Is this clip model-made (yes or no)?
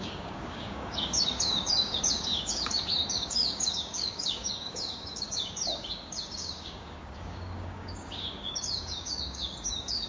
yes